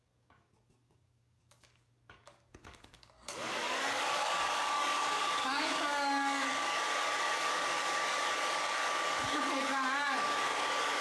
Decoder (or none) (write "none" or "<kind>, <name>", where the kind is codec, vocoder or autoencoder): codec, DAC